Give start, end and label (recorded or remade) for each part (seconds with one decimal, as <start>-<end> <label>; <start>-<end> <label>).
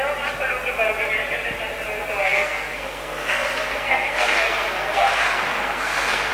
0.0-2.2 recorded; 2.2-6.3 remade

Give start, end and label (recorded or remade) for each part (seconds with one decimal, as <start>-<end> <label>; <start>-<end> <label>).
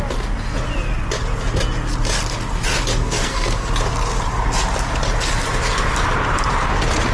0.0-2.9 recorded; 2.9-3.7 remade; 3.7-7.1 recorded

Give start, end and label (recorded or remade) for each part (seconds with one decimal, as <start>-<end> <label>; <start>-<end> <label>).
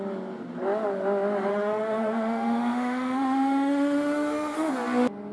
0.0-1.5 recorded; 1.5-4.7 remade; 4.7-5.3 recorded